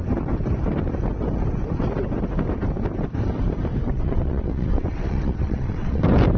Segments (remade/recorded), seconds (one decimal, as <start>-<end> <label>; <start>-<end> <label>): 0.0-3.8 recorded; 3.8-6.0 remade; 6.0-6.4 recorded